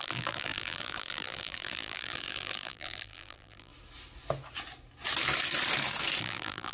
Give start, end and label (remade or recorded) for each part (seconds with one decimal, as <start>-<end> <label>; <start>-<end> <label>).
0.0-3.7 remade; 3.7-6.2 recorded; 6.2-6.7 remade